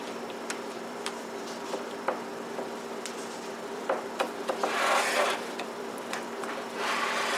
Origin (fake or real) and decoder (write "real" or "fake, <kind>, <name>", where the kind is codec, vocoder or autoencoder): fake, vocoder, BigVGAN v2